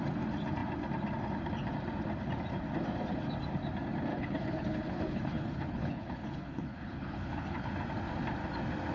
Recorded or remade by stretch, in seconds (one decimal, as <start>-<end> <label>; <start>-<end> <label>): 0.0-4.1 recorded; 4.1-7.7 remade; 7.7-8.9 recorded